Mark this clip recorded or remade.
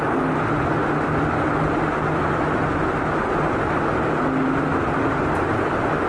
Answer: recorded